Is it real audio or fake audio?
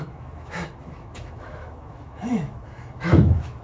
fake